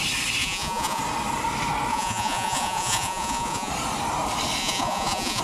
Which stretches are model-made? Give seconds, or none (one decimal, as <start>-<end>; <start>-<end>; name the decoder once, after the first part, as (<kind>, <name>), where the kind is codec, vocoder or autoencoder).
0.4-1.0 (vocoder, Vocos); 1.9-3.7; 4.6-5.4